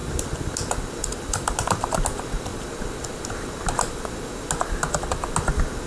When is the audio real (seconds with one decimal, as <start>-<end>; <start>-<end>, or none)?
0.0-5.9